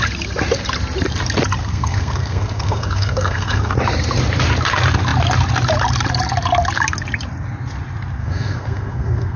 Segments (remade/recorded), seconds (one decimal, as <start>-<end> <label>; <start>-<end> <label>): 0.0-1.6 recorded; 1.6-3.7 remade; 3.7-8.2 recorded; 8.2-9.4 remade